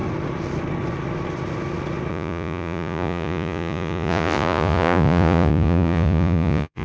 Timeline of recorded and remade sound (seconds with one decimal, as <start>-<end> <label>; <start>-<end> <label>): 0.0-2.1 recorded; 2.1-6.8 remade